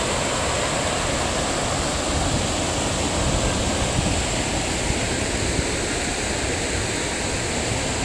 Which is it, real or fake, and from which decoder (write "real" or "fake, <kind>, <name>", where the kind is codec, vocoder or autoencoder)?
real